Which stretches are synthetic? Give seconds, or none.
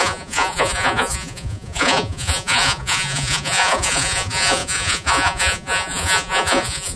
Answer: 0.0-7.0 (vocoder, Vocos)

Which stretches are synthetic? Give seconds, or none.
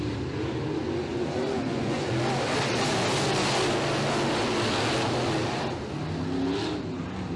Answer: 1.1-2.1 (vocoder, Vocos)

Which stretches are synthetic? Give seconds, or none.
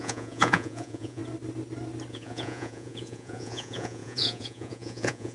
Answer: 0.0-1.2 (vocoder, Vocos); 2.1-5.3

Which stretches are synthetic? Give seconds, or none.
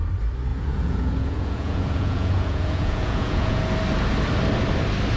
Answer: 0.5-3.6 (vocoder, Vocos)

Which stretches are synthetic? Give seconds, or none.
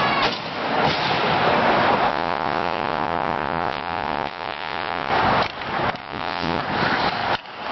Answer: 2.1-5.1 (vocoder, Vocos); 6.0-6.6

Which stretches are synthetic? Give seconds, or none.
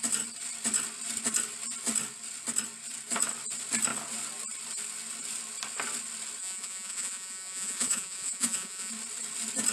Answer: 6.4-8.9 (vocoder, Vocos)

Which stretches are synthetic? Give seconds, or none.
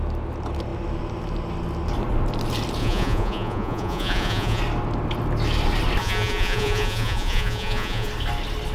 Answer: 2.8-4.6 (vocoder, Vocos); 6.0-8.1